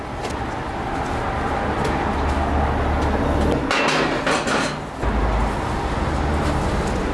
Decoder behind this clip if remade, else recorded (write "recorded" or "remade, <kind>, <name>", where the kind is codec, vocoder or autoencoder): recorded